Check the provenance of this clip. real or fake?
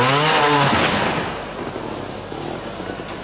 real